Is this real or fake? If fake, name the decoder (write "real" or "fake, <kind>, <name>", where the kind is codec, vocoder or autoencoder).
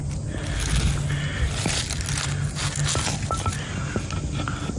real